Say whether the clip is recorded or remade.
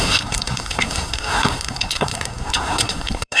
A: remade